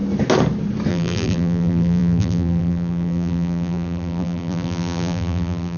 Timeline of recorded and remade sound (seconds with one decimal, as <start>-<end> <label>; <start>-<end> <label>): 0.0-0.9 recorded; 0.9-5.8 remade